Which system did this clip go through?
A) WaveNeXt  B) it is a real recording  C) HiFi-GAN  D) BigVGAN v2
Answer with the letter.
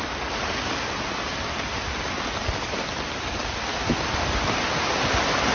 B